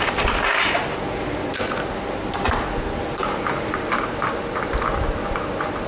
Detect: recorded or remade recorded